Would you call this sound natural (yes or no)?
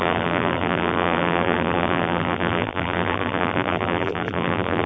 no